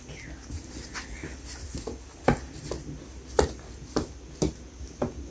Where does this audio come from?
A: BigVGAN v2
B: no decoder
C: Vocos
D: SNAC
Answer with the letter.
B